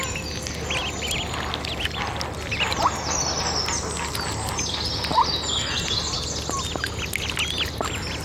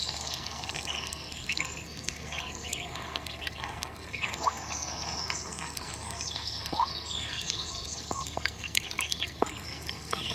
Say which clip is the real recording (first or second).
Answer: first